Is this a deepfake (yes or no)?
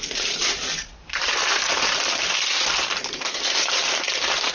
yes